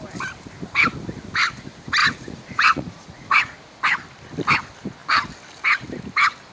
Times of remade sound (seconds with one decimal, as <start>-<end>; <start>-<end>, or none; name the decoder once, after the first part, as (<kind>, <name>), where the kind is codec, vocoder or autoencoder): 2.0-3.8 (vocoder, Vocos)